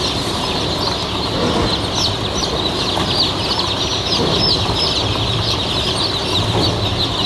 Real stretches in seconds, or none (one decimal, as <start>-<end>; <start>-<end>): 0.0-3.9; 4.6-5.0; 6.5-7.3